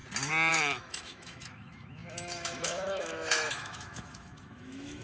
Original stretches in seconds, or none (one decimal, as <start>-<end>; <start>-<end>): 0.0-0.5